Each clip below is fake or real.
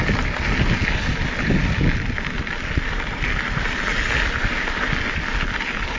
real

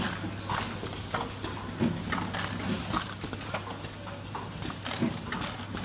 real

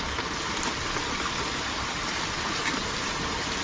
real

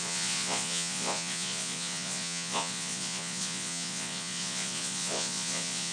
fake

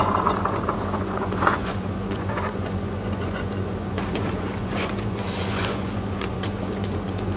fake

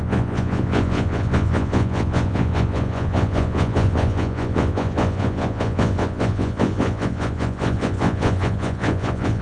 fake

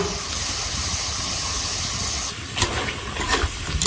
real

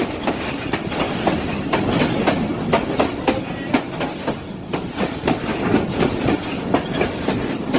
real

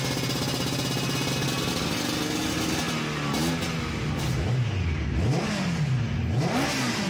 real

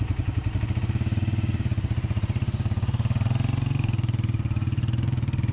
fake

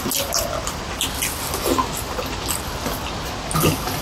real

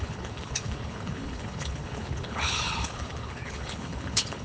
fake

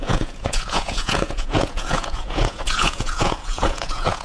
fake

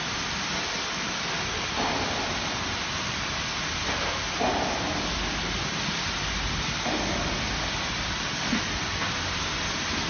real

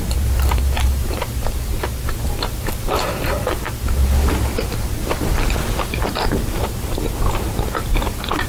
fake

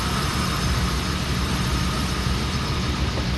real